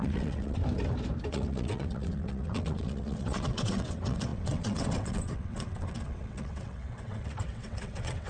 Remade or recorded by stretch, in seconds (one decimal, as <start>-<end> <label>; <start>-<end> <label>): 0.0-0.6 remade; 0.6-1.3 recorded; 1.3-8.3 remade